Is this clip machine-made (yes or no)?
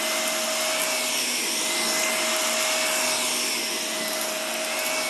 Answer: no